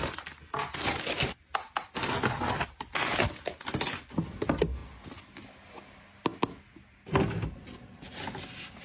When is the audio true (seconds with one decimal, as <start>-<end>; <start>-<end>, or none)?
0.0-8.8